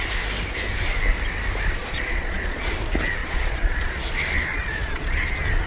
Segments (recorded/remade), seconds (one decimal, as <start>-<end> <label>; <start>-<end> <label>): 0.0-1.8 recorded; 1.8-2.6 remade; 2.6-3.2 recorded; 3.2-4.1 remade; 4.1-4.5 recorded; 4.5-5.2 remade; 5.2-5.7 recorded